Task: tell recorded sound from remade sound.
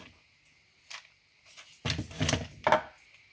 recorded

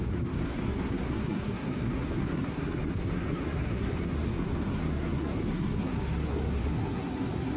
remade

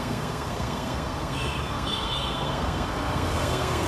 remade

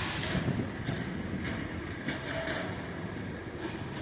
recorded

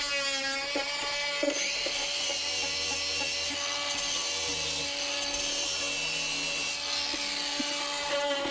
recorded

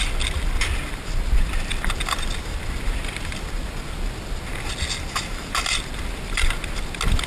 recorded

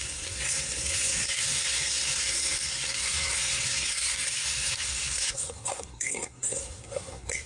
remade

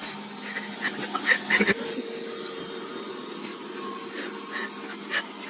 recorded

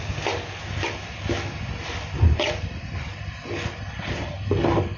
recorded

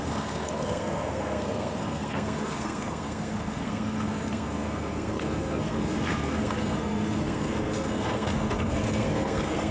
remade